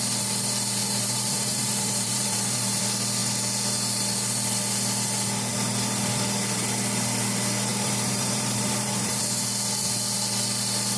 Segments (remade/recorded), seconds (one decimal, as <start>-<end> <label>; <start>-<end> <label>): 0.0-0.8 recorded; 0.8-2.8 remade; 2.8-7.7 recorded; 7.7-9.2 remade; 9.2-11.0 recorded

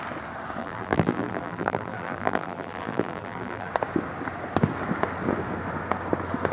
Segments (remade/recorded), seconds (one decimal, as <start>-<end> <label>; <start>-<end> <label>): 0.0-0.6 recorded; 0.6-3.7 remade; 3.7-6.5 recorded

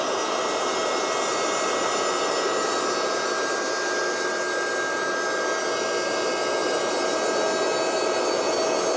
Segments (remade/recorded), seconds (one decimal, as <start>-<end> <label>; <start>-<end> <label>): 0.0-9.0 recorded

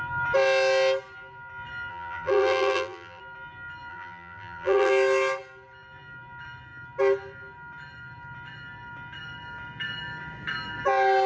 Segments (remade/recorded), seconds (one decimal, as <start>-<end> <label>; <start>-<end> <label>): 0.0-1.9 recorded; 1.9-3.2 remade; 3.2-3.9 recorded; 3.9-4.9 remade; 4.9-11.3 recorded

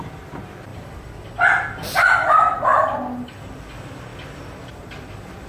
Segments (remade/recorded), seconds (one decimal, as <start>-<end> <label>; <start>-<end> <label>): 0.0-0.7 recorded; 0.7-1.3 remade; 1.3-4.1 recorded; 4.1-5.5 remade

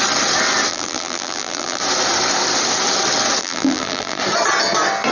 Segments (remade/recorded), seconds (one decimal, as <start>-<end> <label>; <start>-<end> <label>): 0.0-0.7 recorded; 0.7-1.8 remade; 1.8-3.4 recorded; 3.4-4.2 remade; 4.2-5.1 recorded

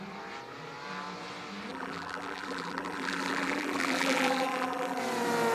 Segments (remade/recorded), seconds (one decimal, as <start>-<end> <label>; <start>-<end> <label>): 0.0-1.7 recorded; 1.7-5.0 remade; 5.0-5.5 recorded

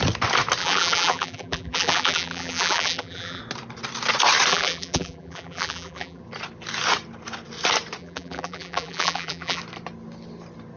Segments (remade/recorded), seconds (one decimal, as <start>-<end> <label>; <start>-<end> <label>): 0.0-0.6 recorded; 0.6-3.4 remade; 3.4-4.5 recorded; 4.5-6.2 remade; 6.2-8.0 recorded; 8.0-9.6 remade; 9.6-10.8 recorded